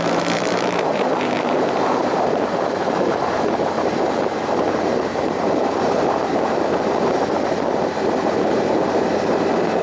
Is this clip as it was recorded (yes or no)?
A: no